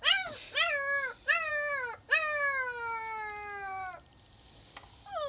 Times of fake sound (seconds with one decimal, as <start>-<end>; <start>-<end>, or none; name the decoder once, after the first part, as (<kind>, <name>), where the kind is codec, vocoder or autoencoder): none